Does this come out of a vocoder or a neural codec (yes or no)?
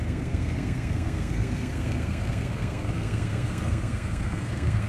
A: yes